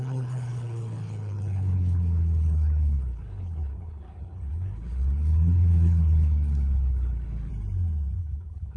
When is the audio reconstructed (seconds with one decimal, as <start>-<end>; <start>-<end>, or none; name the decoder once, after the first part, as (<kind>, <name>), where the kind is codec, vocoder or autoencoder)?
0.0-7.5 (codec, HILCodec); 8.2-8.8